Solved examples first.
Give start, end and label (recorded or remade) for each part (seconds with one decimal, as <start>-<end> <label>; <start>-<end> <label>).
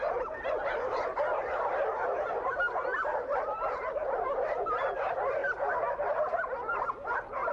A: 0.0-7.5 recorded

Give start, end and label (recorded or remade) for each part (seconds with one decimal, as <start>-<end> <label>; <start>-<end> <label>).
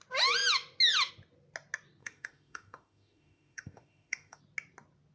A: 0.0-2.0 recorded; 2.0-4.4 remade; 4.4-5.1 recorded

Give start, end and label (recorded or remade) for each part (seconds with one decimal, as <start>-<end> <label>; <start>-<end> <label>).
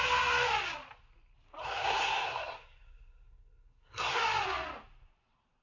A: 0.0-1.6 recorded; 1.6-4.2 remade; 4.2-5.6 recorded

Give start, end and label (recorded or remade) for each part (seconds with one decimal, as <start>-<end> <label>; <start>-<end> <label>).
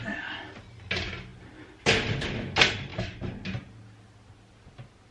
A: 0.0-5.1 recorded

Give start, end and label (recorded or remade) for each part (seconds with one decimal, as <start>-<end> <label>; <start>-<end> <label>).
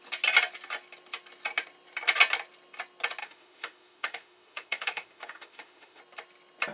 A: 0.0-3.2 recorded; 3.2-6.0 remade; 6.0-6.7 recorded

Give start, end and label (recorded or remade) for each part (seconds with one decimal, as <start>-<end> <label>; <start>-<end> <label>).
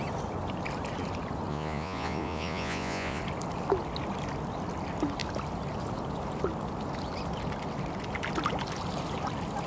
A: 0.0-1.5 recorded; 1.5-3.2 remade; 3.2-9.7 recorded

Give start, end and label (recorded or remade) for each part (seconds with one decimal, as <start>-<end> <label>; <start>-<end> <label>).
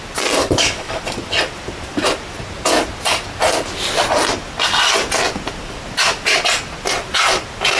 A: 0.0-0.4 recorded; 0.4-1.0 remade; 1.0-7.8 recorded